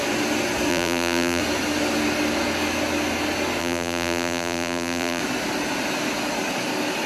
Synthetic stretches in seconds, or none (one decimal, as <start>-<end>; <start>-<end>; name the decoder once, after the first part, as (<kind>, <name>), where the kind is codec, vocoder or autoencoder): 0.7-1.4 (vocoder, BigVGAN v2); 3.6-5.2